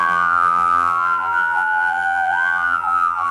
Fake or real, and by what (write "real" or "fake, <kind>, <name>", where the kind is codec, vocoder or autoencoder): fake, vocoder, BigVGAN v2